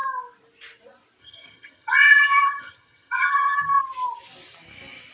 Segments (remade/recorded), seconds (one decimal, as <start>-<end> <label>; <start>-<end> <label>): 0.0-1.2 recorded; 1.2-3.8 remade; 3.8-5.1 recorded